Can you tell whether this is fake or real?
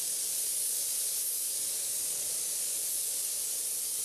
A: real